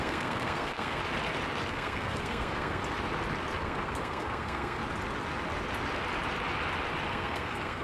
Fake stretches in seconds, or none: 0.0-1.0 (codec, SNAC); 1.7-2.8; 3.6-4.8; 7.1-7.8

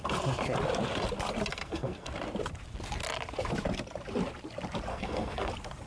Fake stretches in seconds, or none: 1.5-2.1 (codec, SNAC); 4.9-5.5

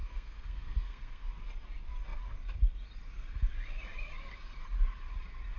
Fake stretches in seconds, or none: 0.0-1.3 (codec, SNAC)

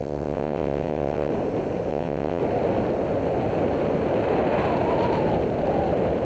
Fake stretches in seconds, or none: 0.0-1.3 (vocoder, WaveNeXt); 1.9-2.4

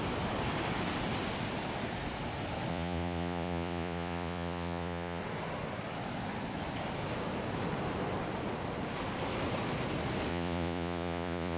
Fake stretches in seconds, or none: 2.7-5.2 (vocoder, Vocos); 10.3-11.6

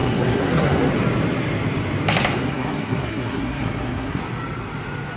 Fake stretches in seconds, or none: 0.0-0.9 (codec, SNAC); 2.4-4.2

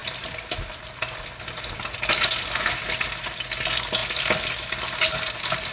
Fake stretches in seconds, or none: none

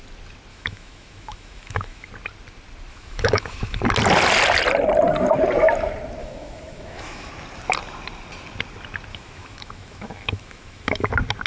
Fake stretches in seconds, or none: 0.5-2.1 (autoencoder, DAC-VAE); 2.9-3.8; 6.2-7.3; 9.1-11.1